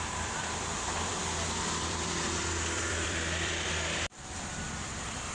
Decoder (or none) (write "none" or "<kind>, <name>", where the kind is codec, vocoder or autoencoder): vocoder, BigVGAN v2